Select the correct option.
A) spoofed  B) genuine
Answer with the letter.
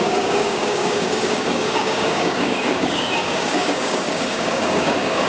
A